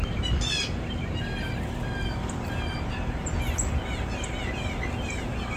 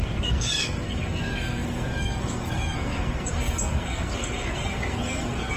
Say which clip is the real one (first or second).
first